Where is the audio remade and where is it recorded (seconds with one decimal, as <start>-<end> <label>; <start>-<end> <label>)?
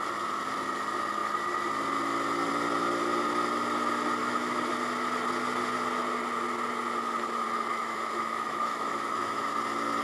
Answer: 0.0-4.2 recorded; 4.2-4.7 remade; 4.7-7.7 recorded; 7.7-9.5 remade; 9.5-10.0 recorded